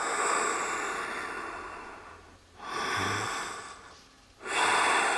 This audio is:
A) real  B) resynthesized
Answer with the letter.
A